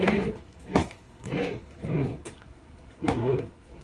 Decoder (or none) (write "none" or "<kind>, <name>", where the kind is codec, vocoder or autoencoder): codec, SNAC